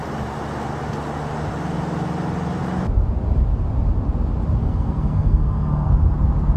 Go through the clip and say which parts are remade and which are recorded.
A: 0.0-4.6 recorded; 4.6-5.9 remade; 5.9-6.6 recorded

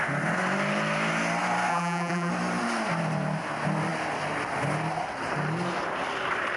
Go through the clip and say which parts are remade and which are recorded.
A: 0.0-1.7 recorded; 1.7-2.3 remade; 2.3-6.6 recorded

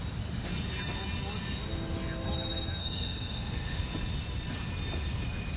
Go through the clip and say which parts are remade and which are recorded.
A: 0.0-2.8 recorded; 2.8-3.8 remade; 3.8-5.6 recorded

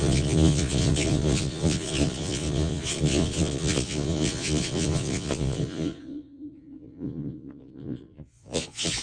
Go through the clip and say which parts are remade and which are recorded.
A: 0.0-9.0 remade

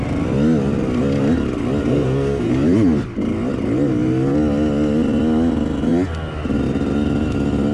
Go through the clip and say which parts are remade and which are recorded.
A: 0.0-1.8 recorded; 1.8-2.5 remade; 2.5-7.7 recorded